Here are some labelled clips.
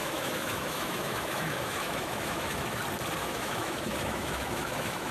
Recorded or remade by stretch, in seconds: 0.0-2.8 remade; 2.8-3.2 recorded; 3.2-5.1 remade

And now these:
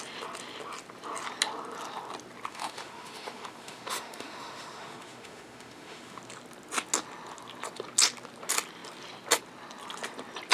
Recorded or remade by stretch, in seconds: 0.0-2.5 recorded; 2.5-6.2 remade; 6.2-10.5 recorded

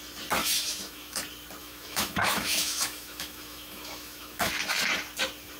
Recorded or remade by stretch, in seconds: 0.0-0.4 recorded; 0.4-1.2 remade; 1.2-1.6 recorded; 1.6-4.5 remade; 4.5-5.6 recorded

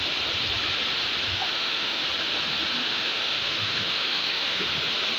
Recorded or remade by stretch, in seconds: 0.0-1.3 recorded; 1.3-2.0 remade; 2.0-2.8 recorded; 2.8-4.7 remade; 4.7-5.2 recorded

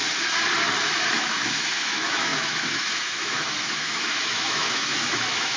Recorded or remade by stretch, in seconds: 0.0-1.1 recorded; 1.1-5.6 remade

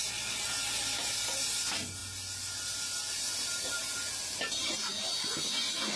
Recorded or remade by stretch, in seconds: 0.0-6.0 recorded

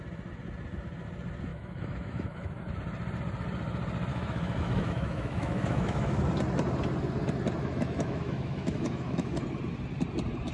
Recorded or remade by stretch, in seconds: 0.0-1.5 recorded; 1.5-2.6 remade; 2.6-4.1 recorded; 4.1-6.2 remade; 6.2-7.6 recorded; 7.6-9.4 remade; 9.4-10.5 recorded